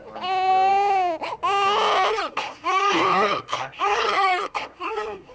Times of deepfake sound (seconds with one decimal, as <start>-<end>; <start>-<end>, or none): 2.1-5.3